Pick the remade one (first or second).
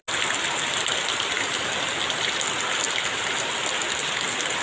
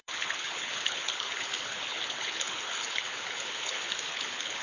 second